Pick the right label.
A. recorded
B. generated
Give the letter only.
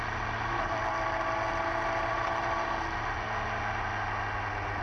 A